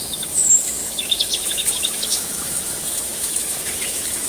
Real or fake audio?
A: fake